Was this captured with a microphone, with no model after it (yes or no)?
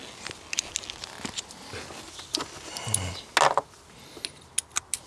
yes